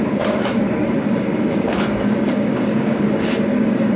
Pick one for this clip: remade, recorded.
remade